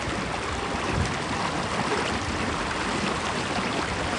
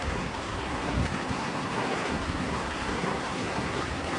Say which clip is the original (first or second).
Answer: first